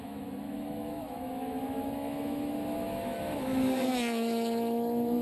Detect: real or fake fake